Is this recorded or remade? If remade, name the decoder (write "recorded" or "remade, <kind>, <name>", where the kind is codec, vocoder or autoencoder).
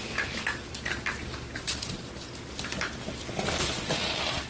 recorded